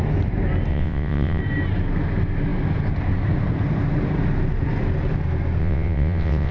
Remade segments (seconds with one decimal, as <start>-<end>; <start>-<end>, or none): 0.7-1.4; 5.6-6.5